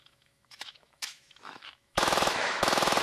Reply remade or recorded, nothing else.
remade